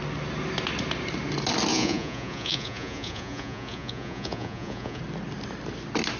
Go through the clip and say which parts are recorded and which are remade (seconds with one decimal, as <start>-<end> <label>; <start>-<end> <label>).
0.0-1.7 recorded; 1.7-5.0 remade; 5.0-6.2 recorded

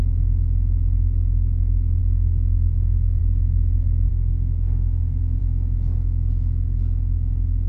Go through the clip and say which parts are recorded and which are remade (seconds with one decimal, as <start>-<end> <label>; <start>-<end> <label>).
0.0-2.0 recorded; 2.0-3.2 remade; 3.2-4.1 recorded; 4.1-5.4 remade; 5.4-7.7 recorded

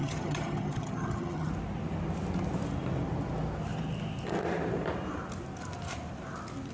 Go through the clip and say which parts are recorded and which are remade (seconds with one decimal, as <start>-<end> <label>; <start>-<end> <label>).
0.0-1.5 remade; 1.5-6.7 recorded

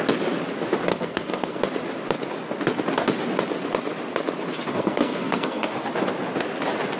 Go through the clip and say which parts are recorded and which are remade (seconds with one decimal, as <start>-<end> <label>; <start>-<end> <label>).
0.0-0.9 recorded; 0.9-1.6 remade; 1.6-4.7 recorded; 4.7-5.7 remade; 5.7-7.0 recorded

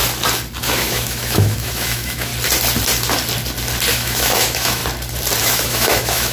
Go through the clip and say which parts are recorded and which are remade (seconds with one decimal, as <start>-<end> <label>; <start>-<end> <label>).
0.0-0.6 recorded; 0.6-2.3 remade; 2.3-3.9 recorded; 3.9-4.8 remade; 4.8-5.4 recorded; 5.4-6.3 remade